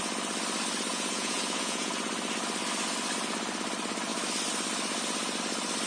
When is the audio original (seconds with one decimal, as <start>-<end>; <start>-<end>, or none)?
0.0-0.9; 1.9-5.9